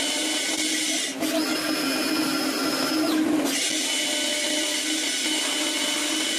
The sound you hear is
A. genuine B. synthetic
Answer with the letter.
A